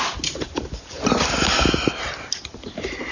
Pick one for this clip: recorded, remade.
recorded